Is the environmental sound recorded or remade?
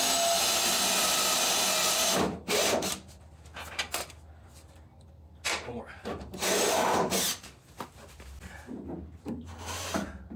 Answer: recorded